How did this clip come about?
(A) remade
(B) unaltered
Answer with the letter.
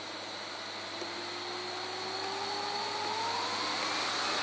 B